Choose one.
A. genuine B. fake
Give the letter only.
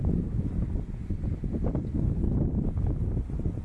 A